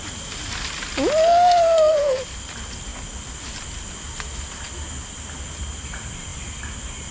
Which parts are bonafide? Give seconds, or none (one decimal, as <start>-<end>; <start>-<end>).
0.0-1.2; 2.2-7.1